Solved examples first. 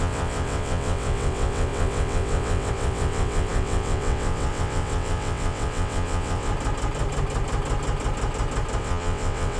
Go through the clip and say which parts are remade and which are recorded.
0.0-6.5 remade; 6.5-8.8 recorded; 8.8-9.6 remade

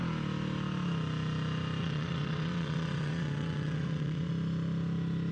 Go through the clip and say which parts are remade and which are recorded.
0.0-1.8 recorded; 1.8-4.3 remade; 4.3-5.3 recorded